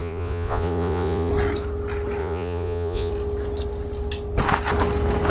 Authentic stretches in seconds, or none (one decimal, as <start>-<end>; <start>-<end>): 1.3-2.2; 3.1-5.3